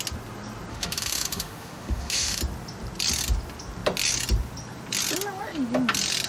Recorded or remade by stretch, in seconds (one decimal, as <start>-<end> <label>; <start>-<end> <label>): 0.0-0.7 recorded; 0.7-2.4 remade; 2.4-6.3 recorded